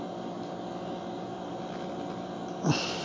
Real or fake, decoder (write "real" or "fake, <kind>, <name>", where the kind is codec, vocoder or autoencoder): real